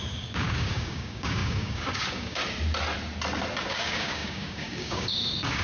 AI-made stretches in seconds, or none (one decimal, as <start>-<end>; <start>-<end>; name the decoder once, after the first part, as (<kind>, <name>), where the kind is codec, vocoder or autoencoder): 0.0-2.4 (codec, DAC); 3.6-5.6